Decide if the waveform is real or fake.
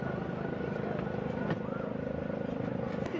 real